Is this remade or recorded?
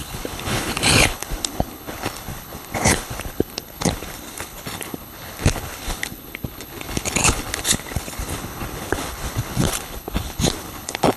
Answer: remade